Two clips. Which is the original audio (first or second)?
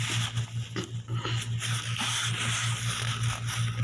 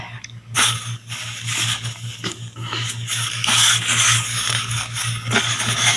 first